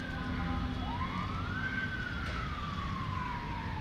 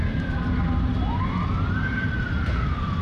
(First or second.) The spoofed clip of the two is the second